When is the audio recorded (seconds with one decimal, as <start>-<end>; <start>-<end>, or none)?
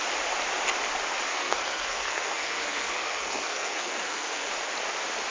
0.0-1.3; 4.5-5.3